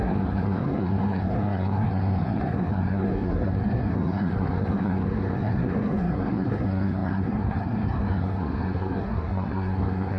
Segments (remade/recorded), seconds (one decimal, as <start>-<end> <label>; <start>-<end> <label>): 0.0-10.2 remade

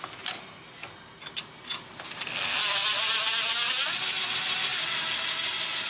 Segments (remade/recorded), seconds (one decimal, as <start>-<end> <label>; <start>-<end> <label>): 0.0-5.9 recorded

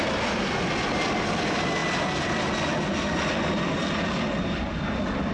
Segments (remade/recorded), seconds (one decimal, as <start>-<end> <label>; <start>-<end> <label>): 0.0-5.3 recorded

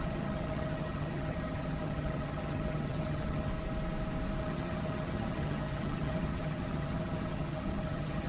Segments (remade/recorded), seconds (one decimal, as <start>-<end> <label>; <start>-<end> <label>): 0.0-3.5 remade; 3.5-4.4 recorded; 4.4-8.3 remade

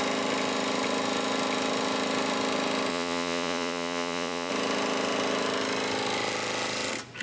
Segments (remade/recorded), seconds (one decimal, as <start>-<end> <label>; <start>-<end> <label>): 0.0-2.9 recorded; 2.9-4.5 remade; 4.5-7.2 recorded

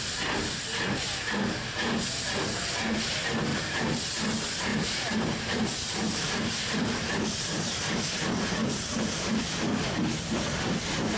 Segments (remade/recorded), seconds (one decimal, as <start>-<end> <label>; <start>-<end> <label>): 0.0-3.5 recorded; 3.5-4.1 remade; 4.1-4.7 recorded; 4.7-8.3 remade; 8.3-11.2 recorded

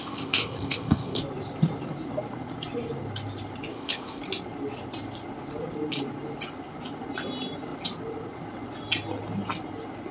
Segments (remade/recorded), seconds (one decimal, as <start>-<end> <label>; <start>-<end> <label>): 0.0-1.2 remade; 1.2-3.7 recorded; 3.7-4.2 remade; 4.2-10.1 recorded

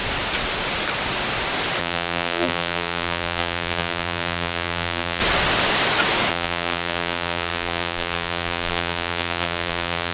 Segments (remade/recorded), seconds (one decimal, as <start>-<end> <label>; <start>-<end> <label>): 0.0-1.8 recorded; 1.8-5.2 remade; 5.2-6.3 recorded; 6.3-10.1 remade